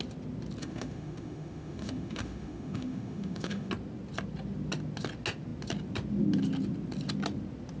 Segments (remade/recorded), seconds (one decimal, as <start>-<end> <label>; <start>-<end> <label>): 0.0-0.6 recorded; 0.6-3.7 remade; 3.7-7.8 recorded